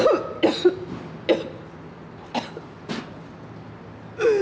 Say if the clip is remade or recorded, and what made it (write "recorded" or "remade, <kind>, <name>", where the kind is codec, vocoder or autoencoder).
recorded